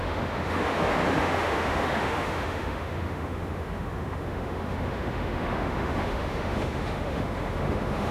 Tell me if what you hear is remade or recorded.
remade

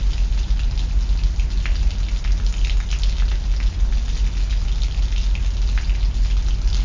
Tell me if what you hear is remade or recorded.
recorded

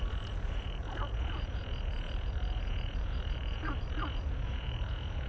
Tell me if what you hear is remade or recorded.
remade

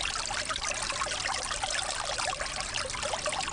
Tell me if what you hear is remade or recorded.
recorded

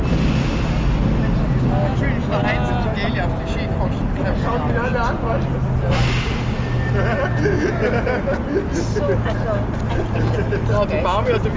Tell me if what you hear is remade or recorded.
recorded